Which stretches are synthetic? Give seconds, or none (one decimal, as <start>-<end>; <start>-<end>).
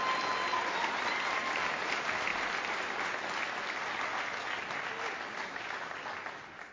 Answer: none